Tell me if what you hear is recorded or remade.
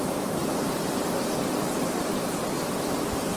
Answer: recorded